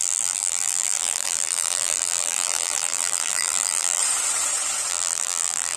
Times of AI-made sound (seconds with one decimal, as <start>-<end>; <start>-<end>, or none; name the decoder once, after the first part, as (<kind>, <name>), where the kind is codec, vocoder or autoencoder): 0.0-4.0 (vocoder, BigVGAN v2); 4.9-5.8